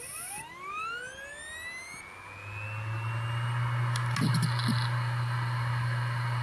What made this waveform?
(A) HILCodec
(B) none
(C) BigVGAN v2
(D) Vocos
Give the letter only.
B